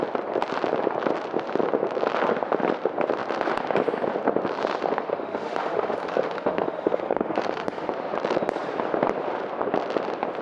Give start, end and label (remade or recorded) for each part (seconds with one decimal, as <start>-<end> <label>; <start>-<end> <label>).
0.0-4.8 recorded; 4.8-7.9 remade; 7.9-10.4 recorded